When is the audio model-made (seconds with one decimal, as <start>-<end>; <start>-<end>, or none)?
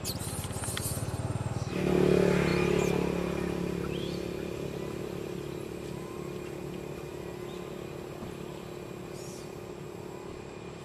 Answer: none